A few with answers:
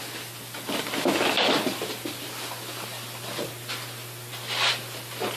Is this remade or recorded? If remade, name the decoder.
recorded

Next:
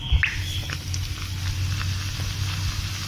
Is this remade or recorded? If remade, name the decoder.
recorded